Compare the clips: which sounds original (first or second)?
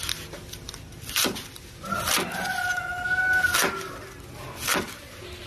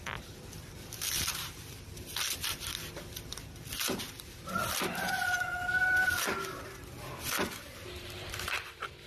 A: first